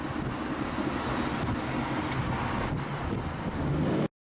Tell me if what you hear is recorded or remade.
recorded